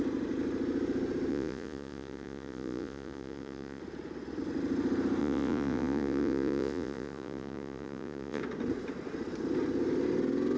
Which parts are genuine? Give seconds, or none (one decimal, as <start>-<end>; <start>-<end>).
0.0-1.3; 3.8-5.2; 8.4-10.6